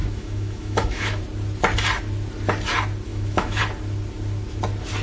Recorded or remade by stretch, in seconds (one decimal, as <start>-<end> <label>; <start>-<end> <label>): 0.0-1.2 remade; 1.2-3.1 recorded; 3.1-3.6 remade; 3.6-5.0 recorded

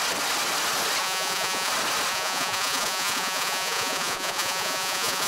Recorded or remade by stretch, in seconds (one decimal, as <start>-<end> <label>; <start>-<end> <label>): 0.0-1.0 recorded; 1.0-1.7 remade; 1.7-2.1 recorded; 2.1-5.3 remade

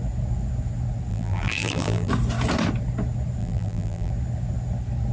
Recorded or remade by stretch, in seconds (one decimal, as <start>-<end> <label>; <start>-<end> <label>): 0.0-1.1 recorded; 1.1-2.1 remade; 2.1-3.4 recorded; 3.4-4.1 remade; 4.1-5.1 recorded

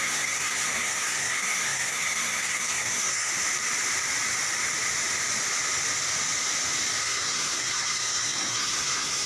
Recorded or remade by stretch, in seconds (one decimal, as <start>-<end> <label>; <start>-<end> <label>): 0.0-3.3 remade; 3.3-7.0 recorded; 7.0-9.3 remade

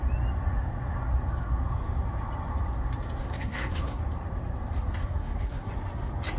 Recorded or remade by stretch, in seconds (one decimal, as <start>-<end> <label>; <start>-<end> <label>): 0.0-3.2 recorded; 3.2-4.0 remade; 4.0-5.0 recorded; 5.0-5.7 remade; 5.7-6.4 recorded

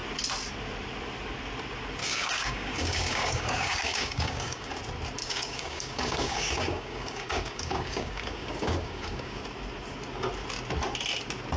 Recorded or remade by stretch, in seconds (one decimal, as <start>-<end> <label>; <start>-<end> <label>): 0.0-2.0 recorded; 2.0-4.7 remade; 4.7-5.2 recorded; 5.2-9.4 remade; 9.4-11.6 recorded

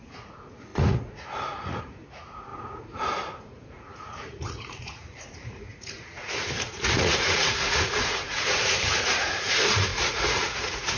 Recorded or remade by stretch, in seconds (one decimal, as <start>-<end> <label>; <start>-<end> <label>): 0.0-11.0 remade

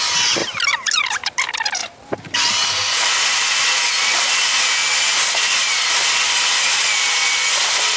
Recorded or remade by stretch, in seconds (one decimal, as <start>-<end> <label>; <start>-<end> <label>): 0.0-8.0 recorded